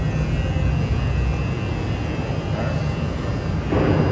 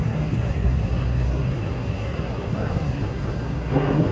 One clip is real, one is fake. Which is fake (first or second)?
second